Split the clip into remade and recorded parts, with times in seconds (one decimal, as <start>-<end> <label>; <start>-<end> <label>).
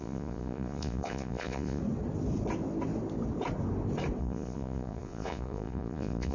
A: 0.0-1.8 remade; 1.8-4.2 recorded; 4.2-6.3 remade